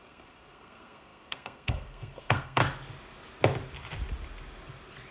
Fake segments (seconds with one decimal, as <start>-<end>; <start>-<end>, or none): 0.0-2.6

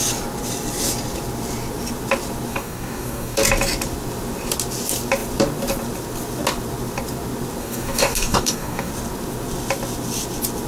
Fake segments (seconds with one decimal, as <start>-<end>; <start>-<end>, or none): 2.5-3.4; 7.6-8.9

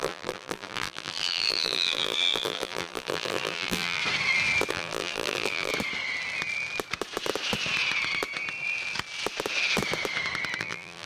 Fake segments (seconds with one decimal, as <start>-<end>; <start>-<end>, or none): 0.0-4.0; 4.7-5.7; 10.6-11.0